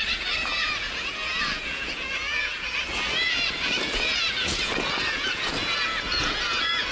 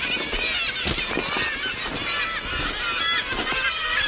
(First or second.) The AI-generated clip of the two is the first